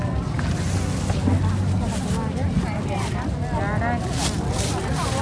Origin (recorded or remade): recorded